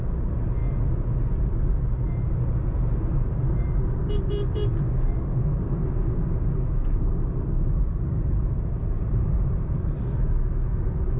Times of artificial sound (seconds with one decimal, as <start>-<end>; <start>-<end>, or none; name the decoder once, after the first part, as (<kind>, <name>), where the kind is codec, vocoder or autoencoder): 0.0-0.6 (vocoder, BigVGAN v2); 1.4-11.2